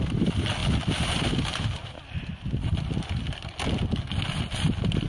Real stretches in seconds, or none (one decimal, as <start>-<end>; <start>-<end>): 0.0-5.1